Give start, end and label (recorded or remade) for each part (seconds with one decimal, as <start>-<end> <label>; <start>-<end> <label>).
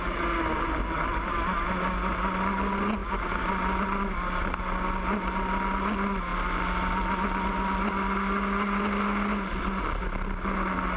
0.0-11.0 recorded